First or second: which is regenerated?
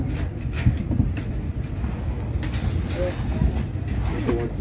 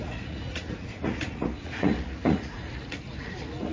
second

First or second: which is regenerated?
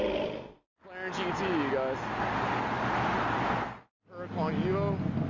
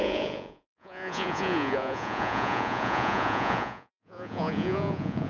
second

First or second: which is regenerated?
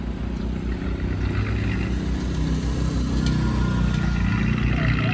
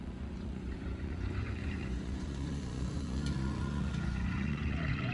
second